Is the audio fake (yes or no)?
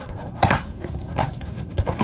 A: yes